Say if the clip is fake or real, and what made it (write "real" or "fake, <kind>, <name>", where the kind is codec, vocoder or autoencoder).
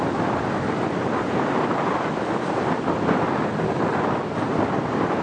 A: real